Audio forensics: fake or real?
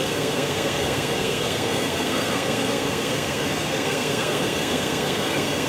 fake